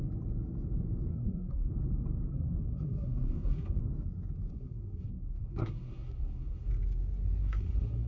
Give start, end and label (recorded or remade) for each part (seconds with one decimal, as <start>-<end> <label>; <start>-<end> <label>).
0.0-1.1 recorded; 1.1-1.7 remade; 1.7-2.3 recorded; 2.3-3.8 remade; 3.8-4.5 recorded; 4.5-6.7 remade; 6.7-7.4 recorded; 7.4-8.1 remade